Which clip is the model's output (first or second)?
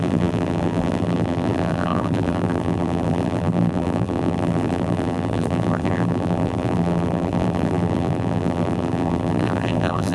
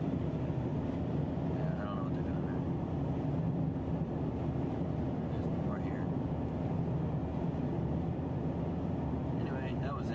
first